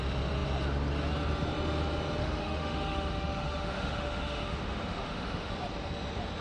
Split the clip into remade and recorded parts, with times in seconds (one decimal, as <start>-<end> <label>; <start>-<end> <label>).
0.0-2.2 recorded; 2.2-5.5 remade; 5.5-6.4 recorded